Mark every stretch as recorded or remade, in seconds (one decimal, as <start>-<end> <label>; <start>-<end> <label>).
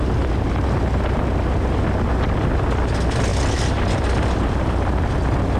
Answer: 0.0-5.6 recorded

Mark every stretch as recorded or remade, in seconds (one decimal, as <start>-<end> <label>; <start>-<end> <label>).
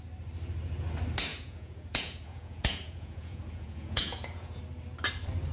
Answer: 0.0-1.3 recorded; 1.3-4.6 remade; 4.6-5.5 recorded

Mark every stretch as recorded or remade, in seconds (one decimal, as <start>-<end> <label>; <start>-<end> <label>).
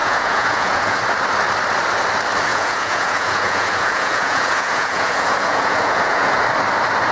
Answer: 0.0-1.0 remade; 1.0-2.5 recorded; 2.5-6.4 remade; 6.4-7.1 recorded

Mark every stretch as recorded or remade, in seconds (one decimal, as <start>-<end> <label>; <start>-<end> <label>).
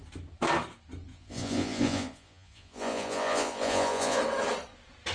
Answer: 0.0-1.1 recorded; 1.1-4.2 remade; 4.2-5.1 recorded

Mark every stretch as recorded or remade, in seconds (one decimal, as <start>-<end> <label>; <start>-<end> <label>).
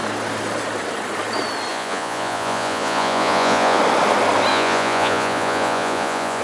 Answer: 0.0-1.7 recorded; 1.7-3.8 remade; 3.8-4.5 recorded; 4.5-6.4 remade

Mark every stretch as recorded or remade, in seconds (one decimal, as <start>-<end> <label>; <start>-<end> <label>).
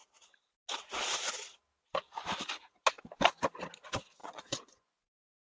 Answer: 0.0-4.2 recorded; 4.2-5.1 remade; 5.1-5.5 recorded